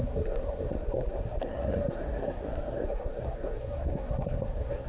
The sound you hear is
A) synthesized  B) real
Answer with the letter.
A